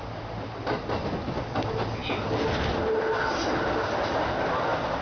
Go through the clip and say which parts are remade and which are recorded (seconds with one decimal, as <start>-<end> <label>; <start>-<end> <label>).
0.0-5.0 recorded